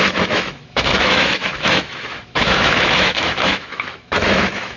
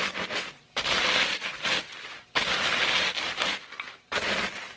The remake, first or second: first